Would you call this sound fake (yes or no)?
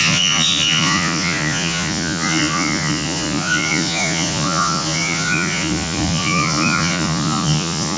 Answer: yes